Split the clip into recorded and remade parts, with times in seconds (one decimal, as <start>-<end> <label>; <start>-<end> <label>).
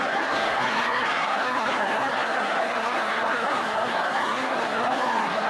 0.0-5.5 remade